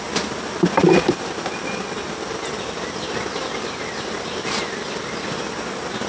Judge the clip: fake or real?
real